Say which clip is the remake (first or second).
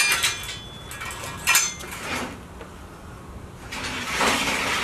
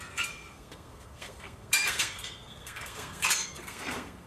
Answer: second